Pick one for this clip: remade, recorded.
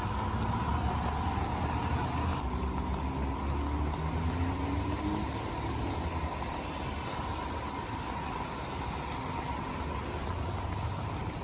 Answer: recorded